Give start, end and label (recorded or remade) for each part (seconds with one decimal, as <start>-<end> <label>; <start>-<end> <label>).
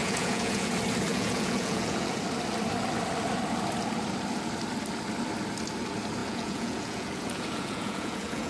0.0-0.7 remade; 0.7-1.1 recorded; 1.1-2.2 remade; 2.2-6.2 recorded; 6.2-8.5 remade